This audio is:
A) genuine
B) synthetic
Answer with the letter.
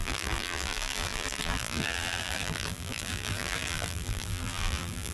B